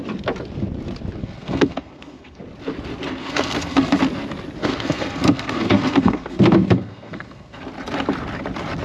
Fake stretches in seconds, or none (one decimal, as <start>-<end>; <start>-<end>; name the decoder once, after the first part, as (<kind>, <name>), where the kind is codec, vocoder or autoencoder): 1.2-2.4 (codec, SNAC); 3.2-4.0; 4.6-7.6